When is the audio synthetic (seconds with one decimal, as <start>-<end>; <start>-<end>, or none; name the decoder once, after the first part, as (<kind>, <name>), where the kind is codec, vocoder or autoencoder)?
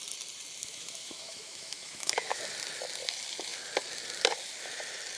0.6-2.4 (autoencoder, DAC-VAE)